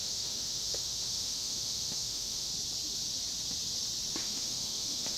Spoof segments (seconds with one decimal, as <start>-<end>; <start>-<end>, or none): 0.0-2.5; 4.2-5.2

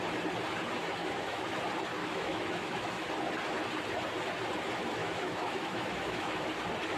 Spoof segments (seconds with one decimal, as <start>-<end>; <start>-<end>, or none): 1.0-1.6; 2.0-3.1; 5.0-6.5

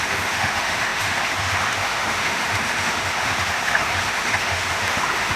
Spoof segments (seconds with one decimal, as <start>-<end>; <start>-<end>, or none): 0.0-5.4

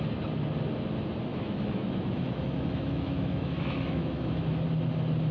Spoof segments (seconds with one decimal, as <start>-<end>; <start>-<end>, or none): 1.3-4.5